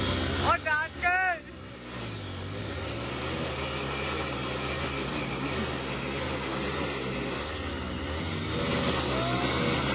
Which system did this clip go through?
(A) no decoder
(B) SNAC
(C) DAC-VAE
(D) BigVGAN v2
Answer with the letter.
A